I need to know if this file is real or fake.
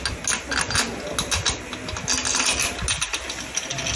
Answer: real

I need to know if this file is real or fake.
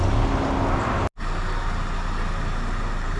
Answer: real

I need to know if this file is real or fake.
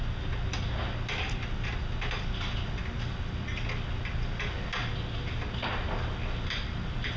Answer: real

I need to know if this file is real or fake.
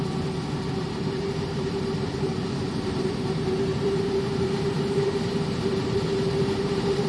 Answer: fake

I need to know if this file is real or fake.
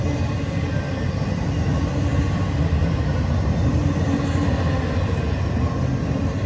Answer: real